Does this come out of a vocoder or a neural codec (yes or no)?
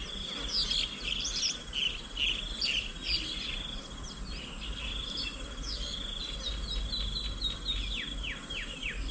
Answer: no